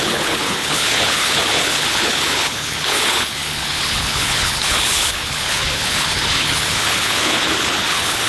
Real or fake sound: fake